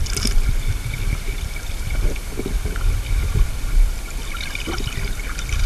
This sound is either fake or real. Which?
fake